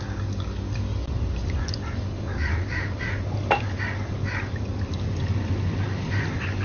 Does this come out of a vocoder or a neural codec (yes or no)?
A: no